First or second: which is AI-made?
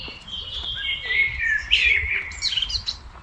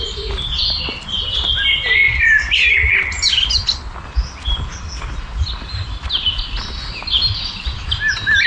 first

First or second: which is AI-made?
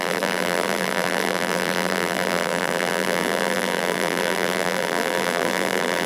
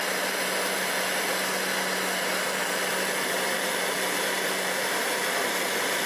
first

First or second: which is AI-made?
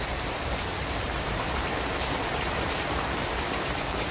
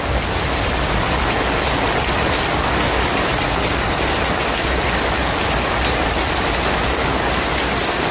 first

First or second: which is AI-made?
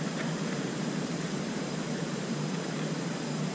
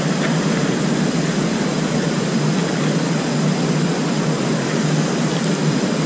first